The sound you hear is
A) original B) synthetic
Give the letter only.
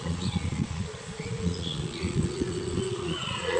B